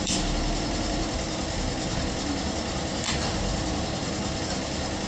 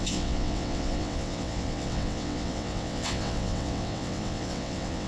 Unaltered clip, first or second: first